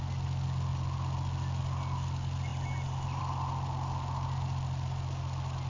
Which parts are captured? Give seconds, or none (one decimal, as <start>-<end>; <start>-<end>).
0.0-5.7